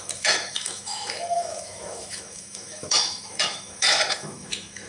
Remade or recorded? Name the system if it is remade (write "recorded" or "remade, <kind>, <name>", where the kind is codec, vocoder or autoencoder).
remade, autoencoder, DAC-VAE